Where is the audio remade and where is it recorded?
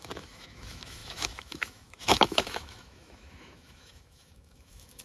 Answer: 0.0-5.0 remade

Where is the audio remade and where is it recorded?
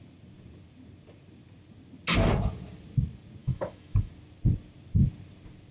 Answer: 0.0-3.4 recorded; 3.4-4.1 remade; 4.1-5.7 recorded